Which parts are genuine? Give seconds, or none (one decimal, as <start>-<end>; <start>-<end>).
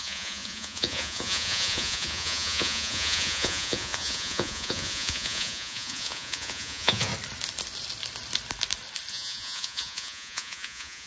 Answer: 7.1-9.1